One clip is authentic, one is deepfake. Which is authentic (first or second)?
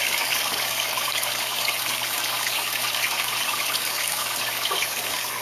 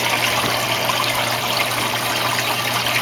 second